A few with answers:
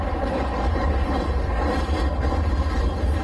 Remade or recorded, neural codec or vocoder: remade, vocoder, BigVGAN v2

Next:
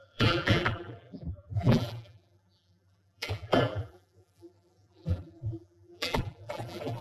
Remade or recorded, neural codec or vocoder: remade, vocoder, BigVGAN v2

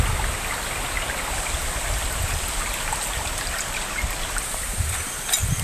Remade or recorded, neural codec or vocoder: recorded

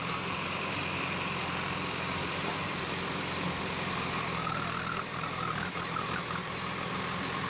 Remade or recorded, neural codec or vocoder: remade, vocoder, BigVGAN v2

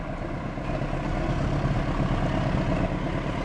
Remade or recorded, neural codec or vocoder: recorded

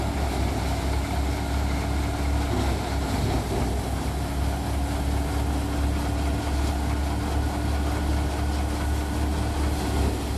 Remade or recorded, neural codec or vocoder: recorded